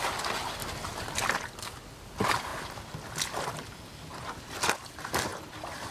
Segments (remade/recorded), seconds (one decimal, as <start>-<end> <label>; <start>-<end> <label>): 0.0-5.9 recorded